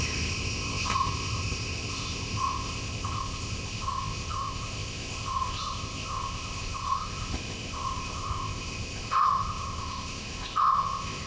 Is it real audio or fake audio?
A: fake